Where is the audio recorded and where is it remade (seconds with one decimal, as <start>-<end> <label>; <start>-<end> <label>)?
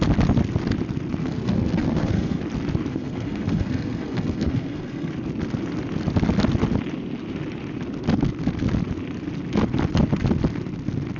0.0-1.2 recorded; 1.2-2.4 remade; 2.4-2.9 recorded; 2.9-5.1 remade; 5.1-11.2 recorded